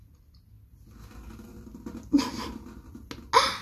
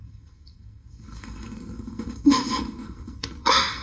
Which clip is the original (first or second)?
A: first